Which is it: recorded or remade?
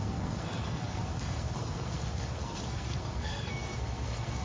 remade